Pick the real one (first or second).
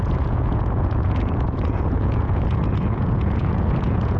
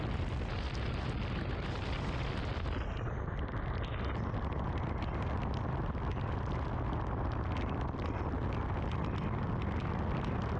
second